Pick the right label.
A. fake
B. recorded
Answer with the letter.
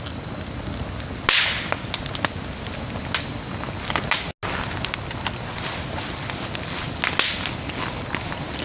B